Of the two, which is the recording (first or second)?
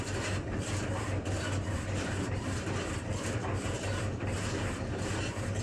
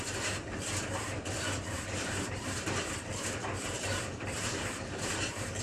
first